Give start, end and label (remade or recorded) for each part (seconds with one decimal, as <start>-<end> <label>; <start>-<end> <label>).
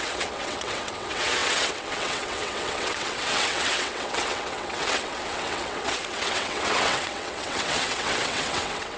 0.0-9.0 remade